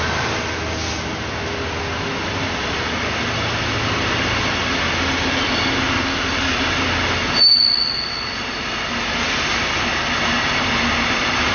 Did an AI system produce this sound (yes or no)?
no